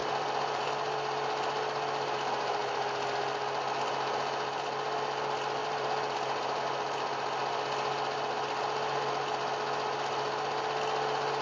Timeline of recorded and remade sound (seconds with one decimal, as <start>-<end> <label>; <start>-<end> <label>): 0.0-0.7 remade; 0.7-5.6 recorded; 5.6-6.6 remade; 6.6-11.4 recorded